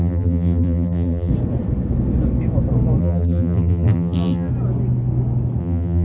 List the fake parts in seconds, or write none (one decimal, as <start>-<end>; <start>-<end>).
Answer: 0.0-1.3; 3.0-4.5; 5.6-6.0